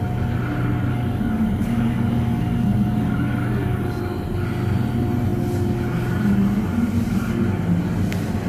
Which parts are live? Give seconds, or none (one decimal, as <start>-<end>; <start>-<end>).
0.0-0.9; 4.0-8.5